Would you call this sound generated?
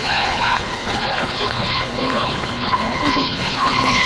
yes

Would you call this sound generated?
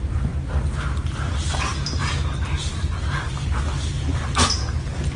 no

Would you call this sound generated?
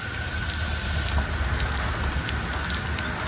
no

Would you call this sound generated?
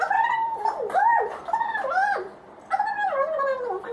no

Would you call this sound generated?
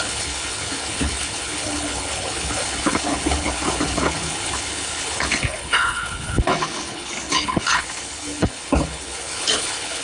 yes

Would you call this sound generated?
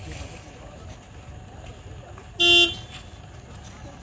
no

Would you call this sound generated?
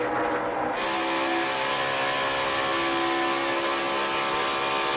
no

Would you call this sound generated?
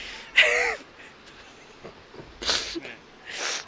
no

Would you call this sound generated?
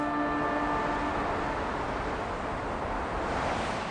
no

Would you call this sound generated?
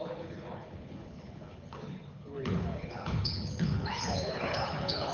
yes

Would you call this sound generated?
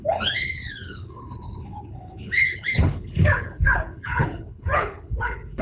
yes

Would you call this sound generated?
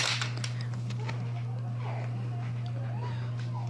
no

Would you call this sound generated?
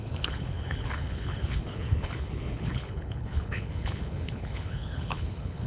yes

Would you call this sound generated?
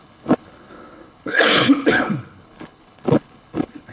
yes